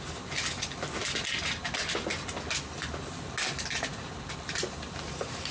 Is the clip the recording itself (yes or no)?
yes